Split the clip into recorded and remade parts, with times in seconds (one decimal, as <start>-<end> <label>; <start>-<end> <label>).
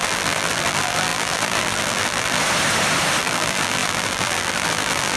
0.0-2.4 remade; 2.4-3.2 recorded; 3.2-5.2 remade